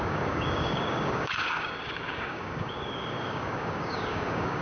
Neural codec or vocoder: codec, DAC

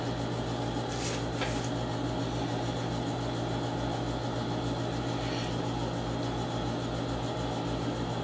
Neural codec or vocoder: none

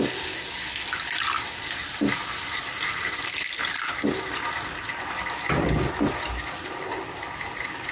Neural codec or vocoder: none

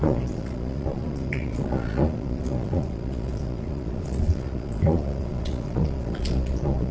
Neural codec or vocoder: vocoder, Vocos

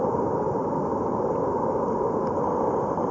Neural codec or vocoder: none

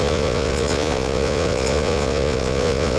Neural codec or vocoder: vocoder, Vocos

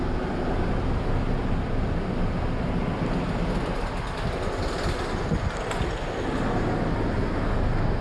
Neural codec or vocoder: none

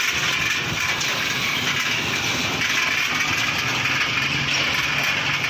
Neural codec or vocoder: none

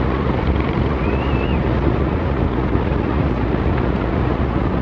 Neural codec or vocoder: vocoder, Vocos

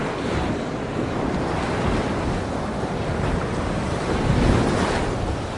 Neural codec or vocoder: none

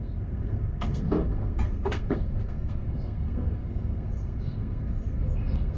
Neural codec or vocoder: codec, SNAC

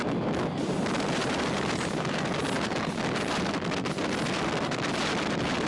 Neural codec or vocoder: none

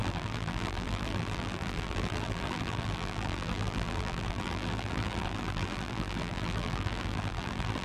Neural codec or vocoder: vocoder, BigVGAN v2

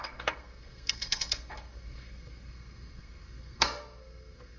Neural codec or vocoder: codec, SNAC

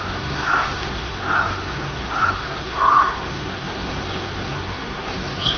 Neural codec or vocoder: codec, SNAC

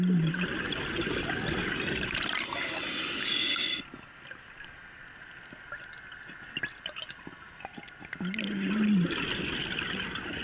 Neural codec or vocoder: none